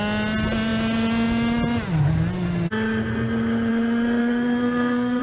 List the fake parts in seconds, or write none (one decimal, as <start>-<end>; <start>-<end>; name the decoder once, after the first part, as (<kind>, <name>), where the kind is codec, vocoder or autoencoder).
4.2-5.2 (codec, SNAC)